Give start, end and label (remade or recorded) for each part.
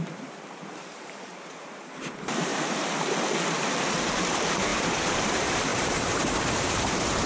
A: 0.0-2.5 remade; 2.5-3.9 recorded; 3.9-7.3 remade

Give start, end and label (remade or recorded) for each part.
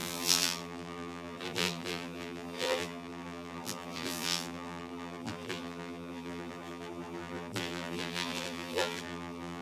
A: 0.0-9.6 remade